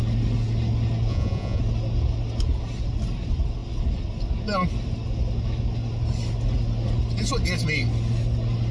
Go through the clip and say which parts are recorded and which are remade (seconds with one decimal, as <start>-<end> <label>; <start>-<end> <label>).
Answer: 0.0-1.1 recorded; 1.1-1.6 remade; 1.6-8.7 recorded